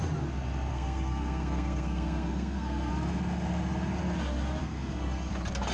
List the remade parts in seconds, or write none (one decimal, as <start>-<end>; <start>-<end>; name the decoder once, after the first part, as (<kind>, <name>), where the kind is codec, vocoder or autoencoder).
0.7-2.9 (codec, SNAC); 4.6-5.3